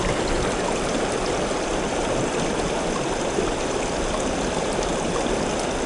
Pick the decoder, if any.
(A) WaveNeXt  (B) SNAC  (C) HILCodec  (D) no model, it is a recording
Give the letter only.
D